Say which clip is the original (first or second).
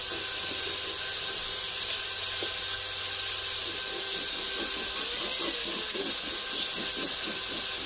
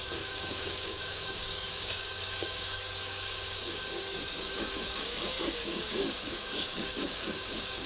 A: first